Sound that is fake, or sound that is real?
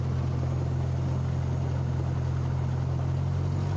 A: real